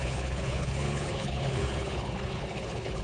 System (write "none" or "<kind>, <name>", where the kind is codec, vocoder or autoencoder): codec, HILCodec